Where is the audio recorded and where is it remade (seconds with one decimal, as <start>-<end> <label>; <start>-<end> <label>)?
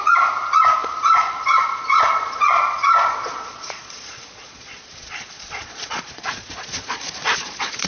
0.0-7.9 remade